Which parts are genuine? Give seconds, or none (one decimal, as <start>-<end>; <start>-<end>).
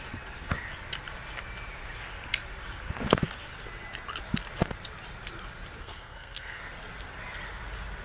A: 0.0-5.8; 6.6-8.0